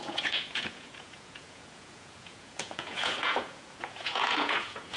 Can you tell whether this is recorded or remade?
remade